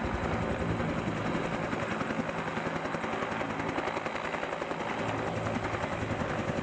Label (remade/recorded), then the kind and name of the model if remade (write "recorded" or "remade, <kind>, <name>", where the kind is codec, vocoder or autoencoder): recorded